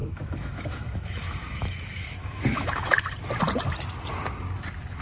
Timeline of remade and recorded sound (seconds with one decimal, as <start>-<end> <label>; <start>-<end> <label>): 0.0-3.0 remade; 3.0-5.0 recorded